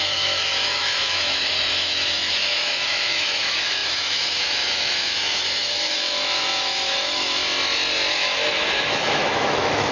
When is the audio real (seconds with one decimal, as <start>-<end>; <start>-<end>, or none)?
7.4-8.1